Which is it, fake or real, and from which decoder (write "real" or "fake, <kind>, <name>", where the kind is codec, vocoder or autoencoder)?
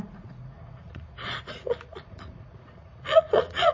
fake, vocoder, Vocos